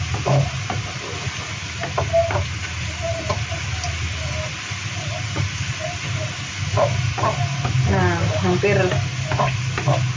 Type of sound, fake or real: real